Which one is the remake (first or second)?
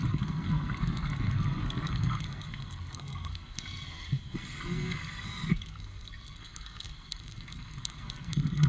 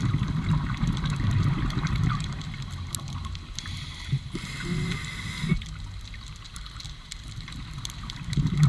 first